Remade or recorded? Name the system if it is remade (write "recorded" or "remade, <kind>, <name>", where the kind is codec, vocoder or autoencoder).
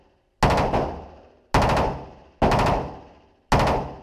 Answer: recorded